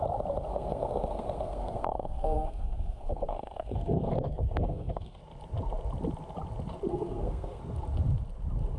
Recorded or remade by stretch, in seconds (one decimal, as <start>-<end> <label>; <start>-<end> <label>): 0.0-0.5 recorded; 0.5-5.2 remade; 5.2-6.9 recorded; 6.9-7.6 remade; 7.6-8.8 recorded